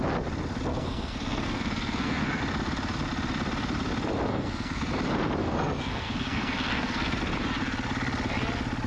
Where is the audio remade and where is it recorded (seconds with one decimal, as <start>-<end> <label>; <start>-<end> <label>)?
0.0-0.7 recorded; 0.7-2.4 remade; 2.4-4.3 recorded; 4.3-4.9 remade; 4.9-5.4 recorded; 5.4-7.2 remade; 7.2-8.9 recorded